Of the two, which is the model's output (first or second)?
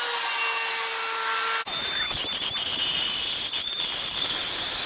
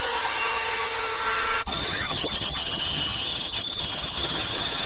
second